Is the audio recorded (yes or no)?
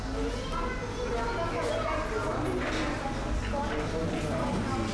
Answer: yes